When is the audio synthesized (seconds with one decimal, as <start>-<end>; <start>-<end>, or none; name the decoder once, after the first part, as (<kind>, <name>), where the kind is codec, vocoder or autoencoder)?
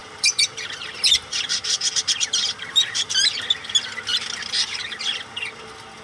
0.0-3.3 (vocoder, BigVGAN v2)